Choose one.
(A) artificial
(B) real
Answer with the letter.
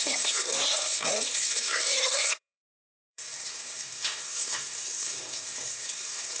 A